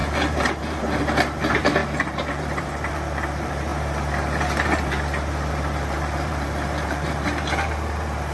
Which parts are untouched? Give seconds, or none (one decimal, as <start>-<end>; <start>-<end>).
3.7-5.5